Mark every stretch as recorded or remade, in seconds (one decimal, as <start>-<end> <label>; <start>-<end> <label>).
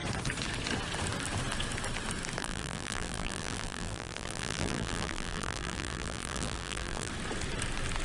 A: 0.0-2.4 recorded; 2.4-7.1 remade; 7.1-8.0 recorded